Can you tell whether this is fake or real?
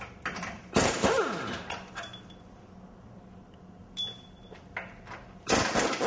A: real